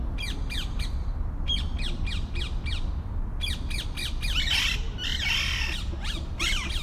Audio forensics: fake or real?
real